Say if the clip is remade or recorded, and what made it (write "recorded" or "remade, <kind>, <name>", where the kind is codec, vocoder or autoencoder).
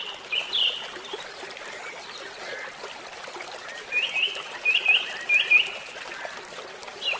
recorded